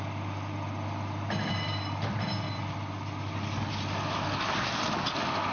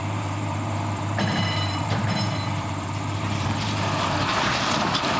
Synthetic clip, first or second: second